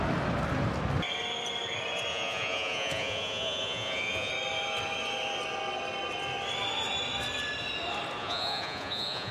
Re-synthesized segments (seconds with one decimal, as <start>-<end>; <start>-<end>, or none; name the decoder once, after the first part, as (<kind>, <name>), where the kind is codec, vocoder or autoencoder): 2.1-4.3 (vocoder, Vocos); 8.2-9.3